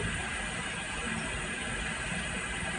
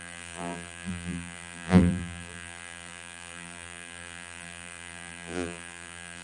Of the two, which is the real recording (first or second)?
first